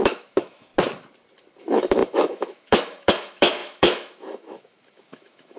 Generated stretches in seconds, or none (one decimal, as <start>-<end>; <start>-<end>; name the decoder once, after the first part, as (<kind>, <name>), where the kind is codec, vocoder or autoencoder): 0.0-0.7 (autoencoder, DAC-VAE); 1.6-5.6